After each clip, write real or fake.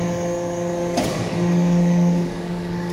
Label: fake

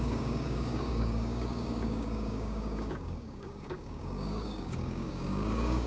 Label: fake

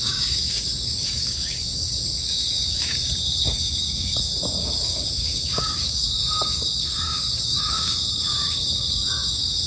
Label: fake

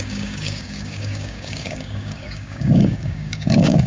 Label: fake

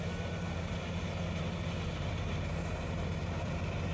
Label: real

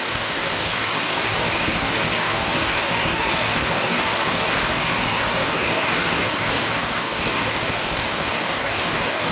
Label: fake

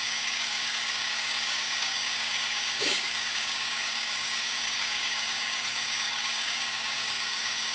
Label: fake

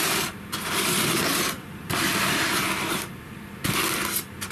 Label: real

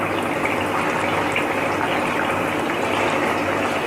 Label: real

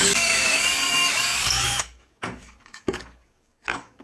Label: fake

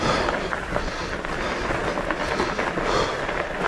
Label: real